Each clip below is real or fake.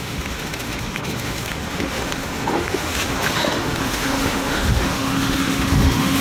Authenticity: fake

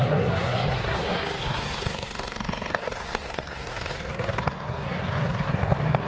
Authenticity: fake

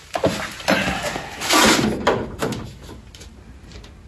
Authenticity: real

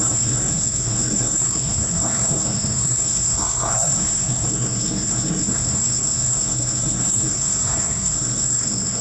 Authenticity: fake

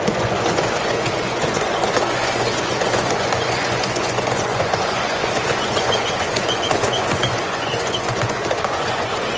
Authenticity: fake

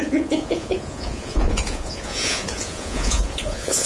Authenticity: fake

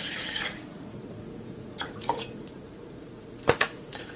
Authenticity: fake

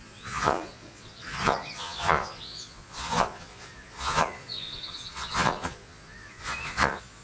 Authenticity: fake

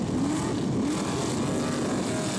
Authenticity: real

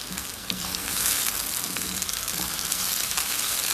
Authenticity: fake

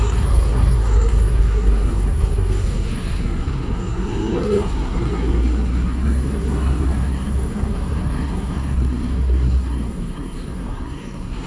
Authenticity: fake